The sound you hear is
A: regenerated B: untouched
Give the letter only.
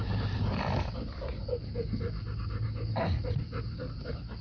B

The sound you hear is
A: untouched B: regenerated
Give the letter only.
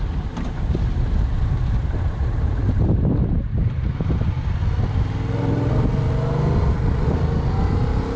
A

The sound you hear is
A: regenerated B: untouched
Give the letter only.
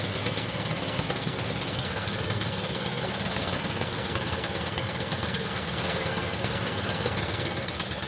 A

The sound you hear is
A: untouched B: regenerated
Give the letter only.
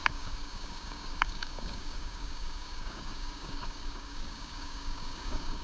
B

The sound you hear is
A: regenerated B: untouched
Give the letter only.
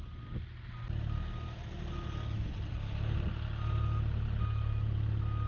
B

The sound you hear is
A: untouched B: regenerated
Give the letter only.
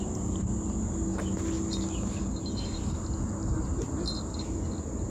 A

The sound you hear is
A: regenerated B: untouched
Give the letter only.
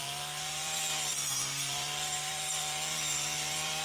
A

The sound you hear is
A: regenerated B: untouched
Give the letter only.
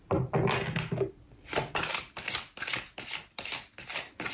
B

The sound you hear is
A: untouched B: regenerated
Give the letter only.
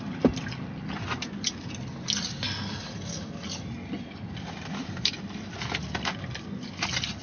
A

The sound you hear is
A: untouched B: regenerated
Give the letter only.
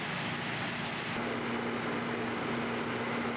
A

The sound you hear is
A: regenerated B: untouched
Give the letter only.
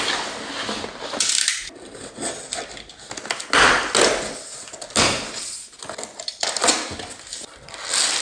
B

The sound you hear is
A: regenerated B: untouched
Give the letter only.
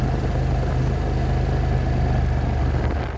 B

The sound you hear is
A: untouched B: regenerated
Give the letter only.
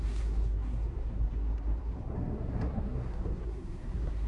B